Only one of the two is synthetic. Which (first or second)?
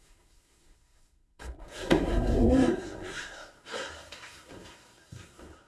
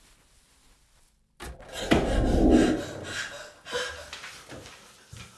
first